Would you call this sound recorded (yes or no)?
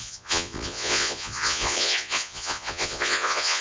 no